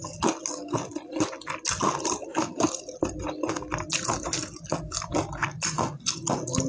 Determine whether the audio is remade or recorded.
recorded